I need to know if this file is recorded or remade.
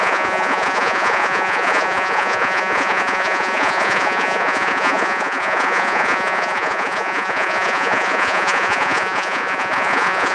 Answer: remade